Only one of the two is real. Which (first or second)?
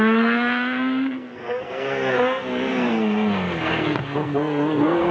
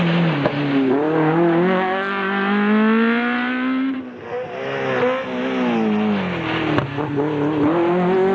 second